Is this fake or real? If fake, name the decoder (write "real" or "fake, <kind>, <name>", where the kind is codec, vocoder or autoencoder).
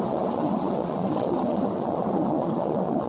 fake, vocoder, WaveNeXt